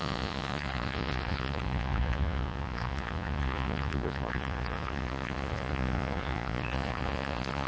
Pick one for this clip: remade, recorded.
remade